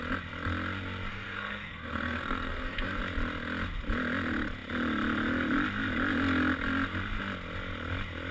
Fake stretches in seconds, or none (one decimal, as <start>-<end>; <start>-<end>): 1.1-3.0